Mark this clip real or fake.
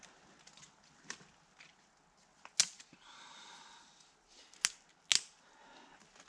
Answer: real